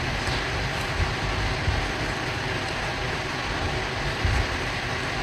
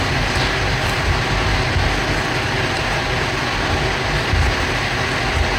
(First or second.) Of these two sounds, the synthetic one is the first